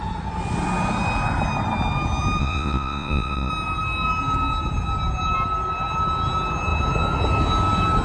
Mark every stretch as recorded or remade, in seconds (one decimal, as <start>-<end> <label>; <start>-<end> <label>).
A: 0.0-2.4 recorded; 2.4-3.5 remade; 3.5-8.0 recorded